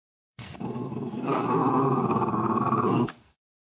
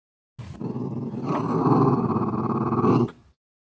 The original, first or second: second